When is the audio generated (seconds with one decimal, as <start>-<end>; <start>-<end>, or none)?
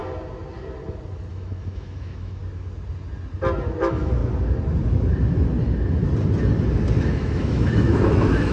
1.3-2.4; 3.8-4.2; 7.0-8.5